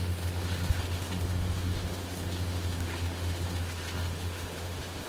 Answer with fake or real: fake